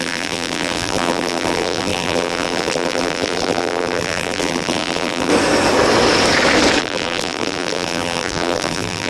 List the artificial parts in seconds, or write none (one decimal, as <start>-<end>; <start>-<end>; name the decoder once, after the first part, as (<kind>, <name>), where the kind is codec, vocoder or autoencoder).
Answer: 0.0-5.3 (vocoder, BigVGAN v2); 6.8-9.1